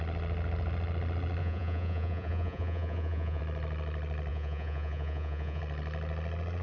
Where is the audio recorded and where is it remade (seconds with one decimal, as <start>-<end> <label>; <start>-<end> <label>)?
0.0-1.4 recorded; 1.4-3.4 remade; 3.4-4.3 recorded; 4.3-5.6 remade; 5.6-6.6 recorded

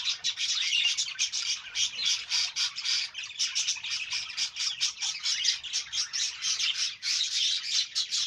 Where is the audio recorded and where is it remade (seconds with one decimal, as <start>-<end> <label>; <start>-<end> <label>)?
0.0-2.0 remade; 2.0-2.5 recorded; 2.5-8.3 remade

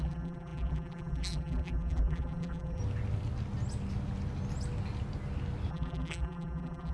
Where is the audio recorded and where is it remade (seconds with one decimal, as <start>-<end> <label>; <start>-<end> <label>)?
0.0-2.8 remade; 2.8-5.7 recorded; 5.7-6.9 remade

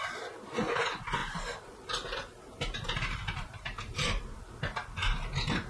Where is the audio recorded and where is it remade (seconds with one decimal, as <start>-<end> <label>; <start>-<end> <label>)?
0.0-1.2 recorded; 1.2-4.6 remade; 4.6-5.7 recorded

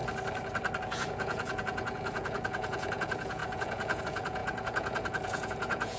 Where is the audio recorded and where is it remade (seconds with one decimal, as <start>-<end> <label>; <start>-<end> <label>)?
0.0-0.8 recorded; 0.8-6.0 remade